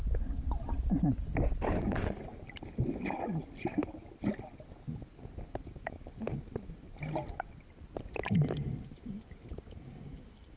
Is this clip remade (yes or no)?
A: no